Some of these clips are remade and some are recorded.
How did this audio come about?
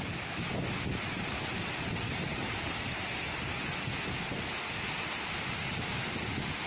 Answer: recorded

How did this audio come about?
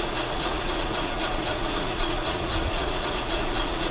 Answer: remade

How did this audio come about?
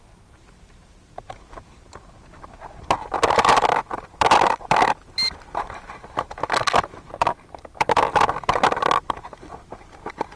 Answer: remade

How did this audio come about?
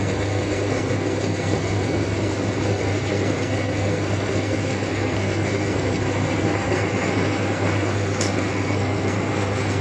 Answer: remade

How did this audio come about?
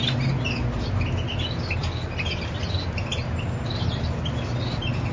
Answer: recorded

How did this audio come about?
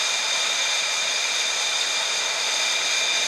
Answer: recorded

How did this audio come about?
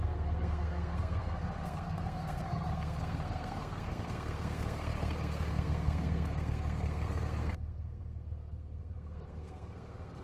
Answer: remade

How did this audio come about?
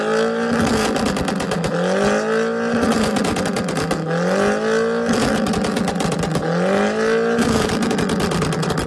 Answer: recorded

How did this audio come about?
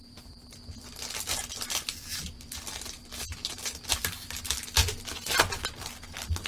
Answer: recorded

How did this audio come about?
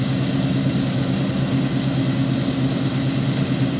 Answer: recorded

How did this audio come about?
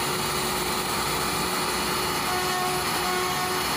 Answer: recorded